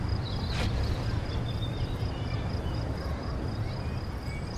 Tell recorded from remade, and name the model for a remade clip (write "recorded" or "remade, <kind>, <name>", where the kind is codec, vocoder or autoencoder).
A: remade, vocoder, BigVGAN v2